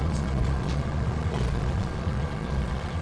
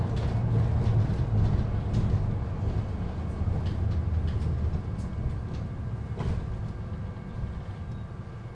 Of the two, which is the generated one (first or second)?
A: first